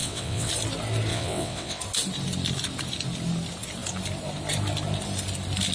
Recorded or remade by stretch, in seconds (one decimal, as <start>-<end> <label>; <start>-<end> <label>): 0.0-0.5 remade; 0.5-1.1 recorded; 1.1-1.8 remade; 1.8-5.7 recorded